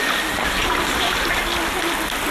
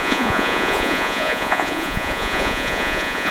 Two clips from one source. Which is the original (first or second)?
first